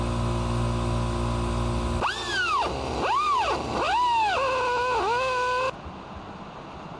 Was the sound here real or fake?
real